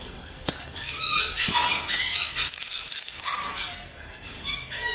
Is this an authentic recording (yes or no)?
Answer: no